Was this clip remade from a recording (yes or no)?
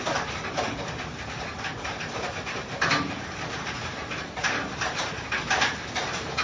yes